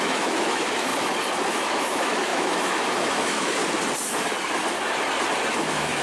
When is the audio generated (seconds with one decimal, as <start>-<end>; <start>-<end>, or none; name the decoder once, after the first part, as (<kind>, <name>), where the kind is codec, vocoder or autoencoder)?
0.0-0.9 (autoencoder, DAC-VAE); 1.5-3.6; 5.5-6.0